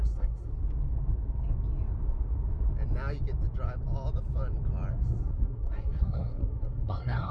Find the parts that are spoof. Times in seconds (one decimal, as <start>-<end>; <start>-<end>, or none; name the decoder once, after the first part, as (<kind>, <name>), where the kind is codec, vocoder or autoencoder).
0.0-0.5 (codec, SNAC); 4.9-7.3